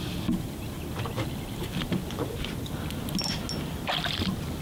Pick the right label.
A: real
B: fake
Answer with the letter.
A